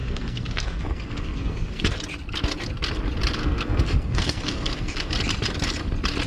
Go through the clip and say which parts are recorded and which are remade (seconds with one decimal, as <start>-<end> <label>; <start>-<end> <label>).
0.0-1.9 remade; 1.9-3.4 recorded; 3.4-5.1 remade; 5.1-6.3 recorded